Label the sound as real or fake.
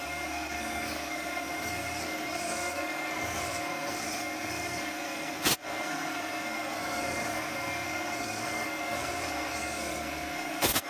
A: fake